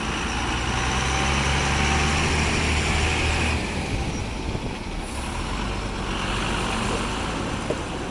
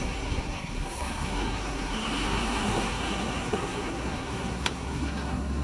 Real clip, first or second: first